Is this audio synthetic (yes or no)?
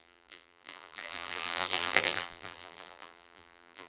yes